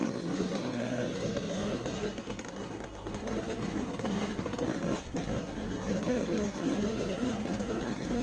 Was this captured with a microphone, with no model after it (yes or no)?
no